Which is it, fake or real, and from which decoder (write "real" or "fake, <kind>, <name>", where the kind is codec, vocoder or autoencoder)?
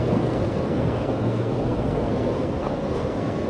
fake, codec, SNAC